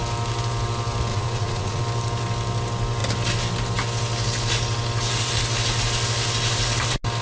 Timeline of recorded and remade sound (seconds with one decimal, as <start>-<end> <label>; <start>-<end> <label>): 0.0-1.1 recorded; 1.1-1.8 remade; 1.8-7.2 recorded

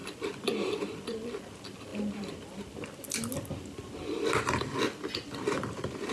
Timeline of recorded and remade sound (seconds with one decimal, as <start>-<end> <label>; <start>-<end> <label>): 0.0-6.1 recorded

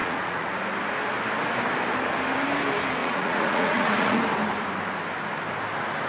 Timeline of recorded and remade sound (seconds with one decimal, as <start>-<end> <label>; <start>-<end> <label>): 0.0-0.5 remade; 0.5-3.0 recorded; 3.0-4.2 remade; 4.2-6.1 recorded

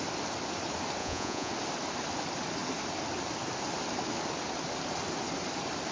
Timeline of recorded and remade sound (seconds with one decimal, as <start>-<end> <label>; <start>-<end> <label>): 0.0-1.0 recorded; 1.0-1.5 remade; 1.5-5.9 recorded

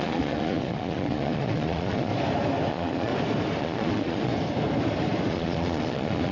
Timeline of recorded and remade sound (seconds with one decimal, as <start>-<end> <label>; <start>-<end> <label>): 0.0-2.1 remade; 2.1-2.7 recorded; 2.7-3.1 remade; 3.1-3.6 recorded; 3.6-4.3 remade; 4.3-5.3 recorded; 5.3-6.3 remade

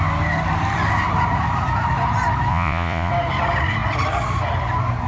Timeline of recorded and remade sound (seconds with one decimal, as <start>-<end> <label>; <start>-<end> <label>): 0.0-2.5 recorded; 2.5-3.1 remade; 3.1-5.1 recorded

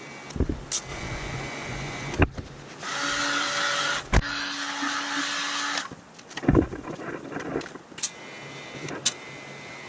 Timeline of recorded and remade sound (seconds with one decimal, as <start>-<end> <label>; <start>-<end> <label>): 0.0-0.9 recorded; 0.9-2.2 remade; 2.2-9.9 recorded

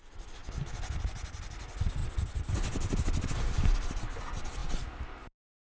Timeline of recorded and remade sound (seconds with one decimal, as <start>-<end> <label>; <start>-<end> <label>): 0.0-5.7 recorded